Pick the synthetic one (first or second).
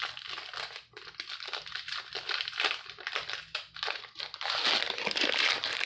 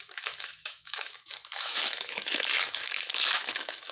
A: second